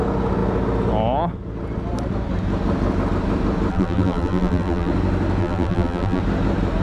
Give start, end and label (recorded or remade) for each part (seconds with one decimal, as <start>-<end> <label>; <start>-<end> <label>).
0.0-3.7 recorded; 3.7-4.9 remade; 4.9-5.4 recorded; 5.4-6.2 remade; 6.2-6.8 recorded